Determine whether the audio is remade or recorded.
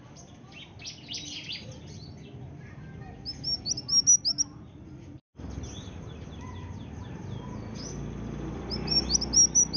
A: recorded